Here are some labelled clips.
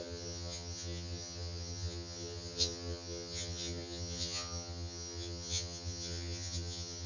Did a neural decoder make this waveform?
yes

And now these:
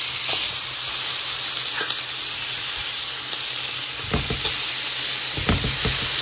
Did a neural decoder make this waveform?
no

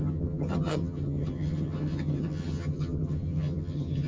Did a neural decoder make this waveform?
yes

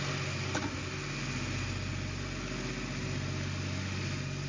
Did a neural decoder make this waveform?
no